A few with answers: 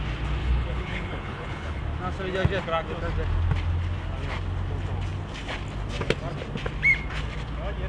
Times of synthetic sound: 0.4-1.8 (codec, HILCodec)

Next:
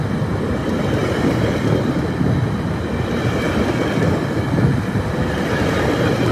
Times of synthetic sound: none

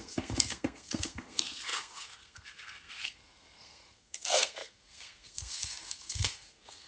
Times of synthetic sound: 0.0-6.9 (codec, SNAC)

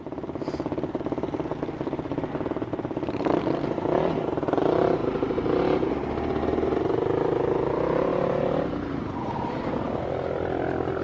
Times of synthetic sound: none

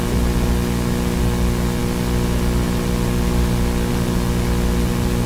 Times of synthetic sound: none